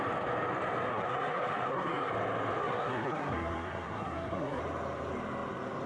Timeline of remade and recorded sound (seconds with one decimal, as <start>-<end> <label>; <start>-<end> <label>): 0.0-0.9 recorded; 0.9-2.1 remade; 2.1-2.6 recorded; 2.6-4.6 remade; 4.6-5.9 recorded